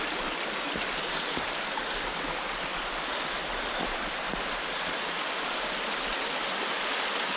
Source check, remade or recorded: recorded